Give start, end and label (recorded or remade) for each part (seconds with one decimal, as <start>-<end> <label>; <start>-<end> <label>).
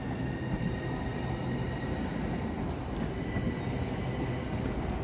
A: 0.0-5.0 recorded